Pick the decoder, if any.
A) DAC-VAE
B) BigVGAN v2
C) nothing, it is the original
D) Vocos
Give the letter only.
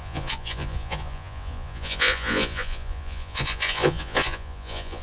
D